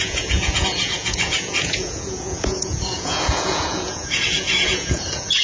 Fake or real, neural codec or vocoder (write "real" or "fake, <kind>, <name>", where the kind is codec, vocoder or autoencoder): fake, vocoder, Vocos